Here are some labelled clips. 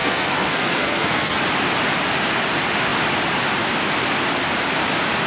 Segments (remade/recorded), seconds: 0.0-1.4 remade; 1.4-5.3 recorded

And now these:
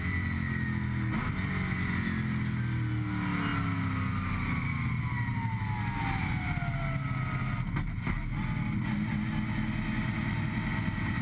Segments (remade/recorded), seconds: 0.0-11.2 recorded

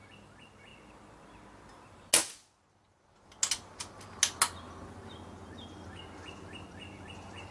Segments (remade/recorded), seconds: 0.0-7.5 recorded

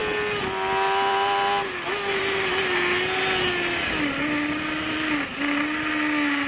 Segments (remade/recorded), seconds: 0.0-6.5 recorded